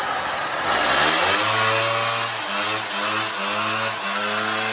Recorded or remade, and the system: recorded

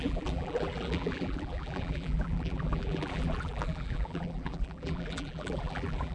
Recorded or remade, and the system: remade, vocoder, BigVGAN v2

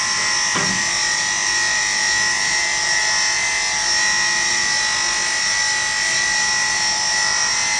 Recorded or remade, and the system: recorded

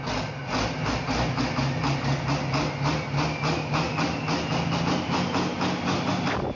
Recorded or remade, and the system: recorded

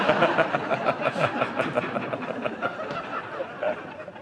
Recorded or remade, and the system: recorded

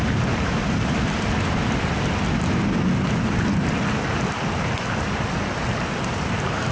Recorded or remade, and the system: recorded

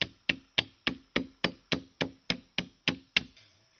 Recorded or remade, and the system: recorded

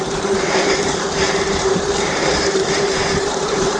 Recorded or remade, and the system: remade, vocoder, BigVGAN v2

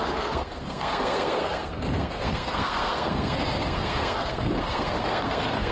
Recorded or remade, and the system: remade, codec, SNAC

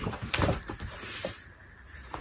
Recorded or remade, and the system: remade, vocoder, BigVGAN v2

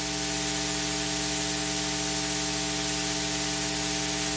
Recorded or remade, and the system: recorded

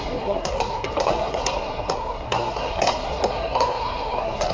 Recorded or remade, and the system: remade, codec, SNAC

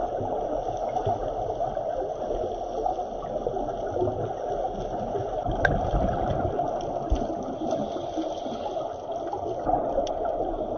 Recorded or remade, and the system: recorded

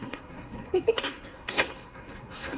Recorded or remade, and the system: remade, codec, SNAC